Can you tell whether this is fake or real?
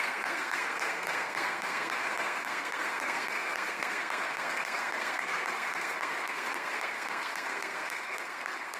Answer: fake